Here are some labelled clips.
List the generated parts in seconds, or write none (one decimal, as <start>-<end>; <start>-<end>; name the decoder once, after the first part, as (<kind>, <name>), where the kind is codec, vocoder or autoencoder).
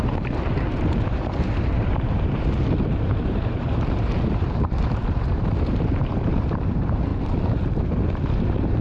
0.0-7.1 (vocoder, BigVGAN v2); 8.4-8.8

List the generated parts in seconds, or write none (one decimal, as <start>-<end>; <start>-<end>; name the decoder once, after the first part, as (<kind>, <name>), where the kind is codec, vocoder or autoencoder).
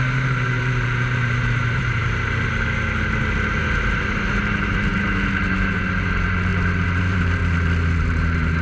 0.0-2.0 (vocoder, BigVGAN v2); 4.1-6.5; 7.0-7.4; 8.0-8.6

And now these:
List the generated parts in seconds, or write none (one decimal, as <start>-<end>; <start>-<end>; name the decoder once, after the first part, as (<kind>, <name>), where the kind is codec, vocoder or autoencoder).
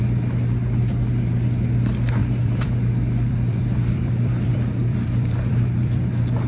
2.2-6.1 (vocoder, BigVGAN v2)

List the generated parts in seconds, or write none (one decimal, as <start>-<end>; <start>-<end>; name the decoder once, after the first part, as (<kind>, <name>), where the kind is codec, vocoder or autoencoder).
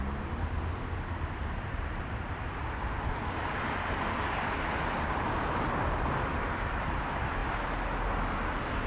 1.7-2.5 (vocoder, BigVGAN v2); 6.3-7.0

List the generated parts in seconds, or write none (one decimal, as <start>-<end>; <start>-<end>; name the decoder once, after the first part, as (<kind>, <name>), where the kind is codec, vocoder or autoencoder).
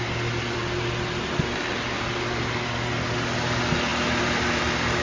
none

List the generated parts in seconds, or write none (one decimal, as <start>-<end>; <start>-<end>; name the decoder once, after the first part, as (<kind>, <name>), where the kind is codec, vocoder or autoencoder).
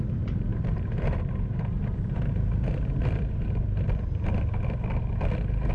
0.5-3.9 (vocoder, BigVGAN v2)